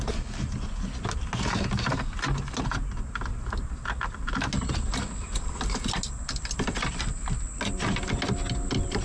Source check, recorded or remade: recorded